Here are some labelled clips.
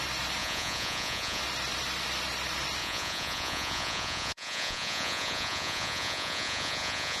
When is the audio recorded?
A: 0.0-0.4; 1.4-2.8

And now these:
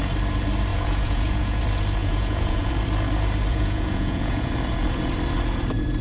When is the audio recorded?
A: 0.0-0.7; 1.6-2.0; 2.7-3.5; 4.5-6.0